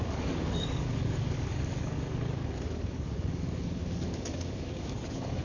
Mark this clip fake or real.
fake